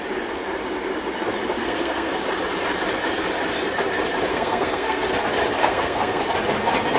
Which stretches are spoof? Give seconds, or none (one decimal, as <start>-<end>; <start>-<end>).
1.6-2.1; 4.3-5.1; 5.6-6.2